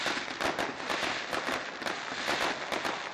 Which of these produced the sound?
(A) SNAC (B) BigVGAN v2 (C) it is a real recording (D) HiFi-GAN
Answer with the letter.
C